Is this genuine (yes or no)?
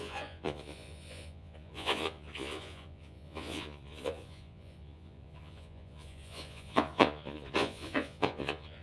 no